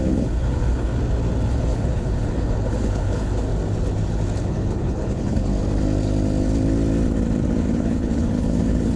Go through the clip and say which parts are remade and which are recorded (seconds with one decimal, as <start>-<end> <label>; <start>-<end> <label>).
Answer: 0.0-0.9 remade; 0.9-1.5 recorded; 1.5-3.5 remade; 3.5-4.4 recorded; 4.4-5.5 remade; 5.5-7.6 recorded; 7.6-9.0 remade